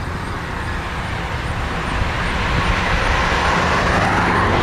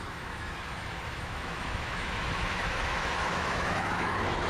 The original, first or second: first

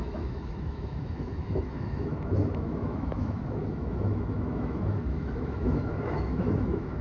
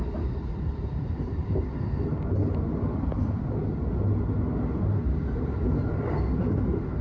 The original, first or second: second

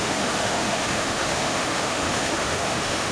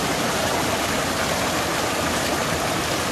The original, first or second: second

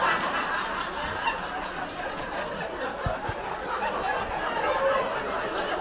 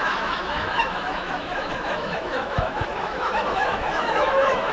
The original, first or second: first